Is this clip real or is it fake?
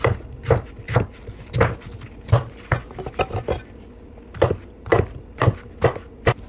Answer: real